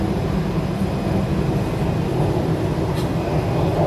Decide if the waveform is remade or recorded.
recorded